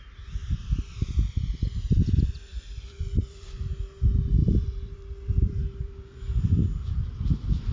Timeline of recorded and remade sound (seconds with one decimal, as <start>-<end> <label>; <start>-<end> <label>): 0.0-0.4 recorded; 0.4-3.7 remade; 3.7-4.4 recorded; 4.4-6.4 remade; 6.4-7.7 recorded